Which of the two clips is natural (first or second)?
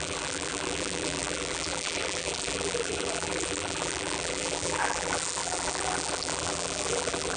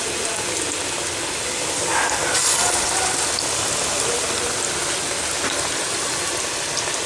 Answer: second